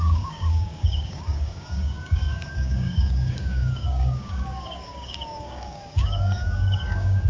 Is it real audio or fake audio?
fake